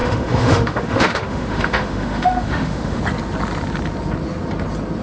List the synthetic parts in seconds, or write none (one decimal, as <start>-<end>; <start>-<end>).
0.0-3.0